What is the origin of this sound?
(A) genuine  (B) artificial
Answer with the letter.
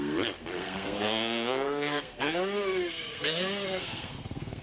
B